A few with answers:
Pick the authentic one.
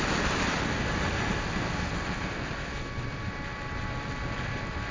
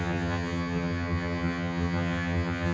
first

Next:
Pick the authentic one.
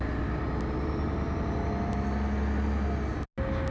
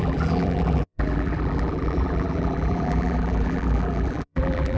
first